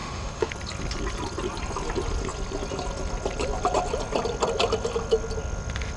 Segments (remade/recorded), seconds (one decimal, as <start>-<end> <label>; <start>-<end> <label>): 0.0-0.5 remade; 0.5-6.0 recorded